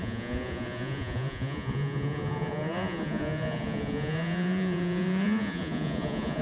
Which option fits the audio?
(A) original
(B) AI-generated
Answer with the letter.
B